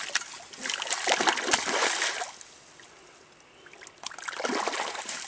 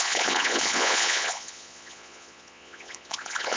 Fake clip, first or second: second